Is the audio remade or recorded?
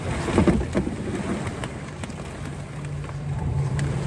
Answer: recorded